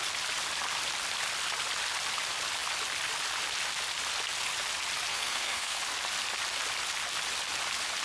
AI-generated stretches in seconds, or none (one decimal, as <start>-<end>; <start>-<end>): 5.1-5.8